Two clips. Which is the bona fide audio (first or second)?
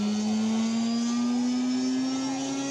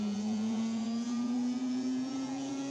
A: first